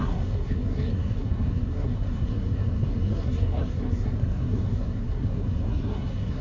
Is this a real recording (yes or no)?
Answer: no